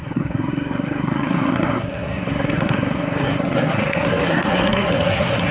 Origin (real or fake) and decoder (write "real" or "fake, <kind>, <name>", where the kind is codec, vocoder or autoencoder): fake, codec, SNAC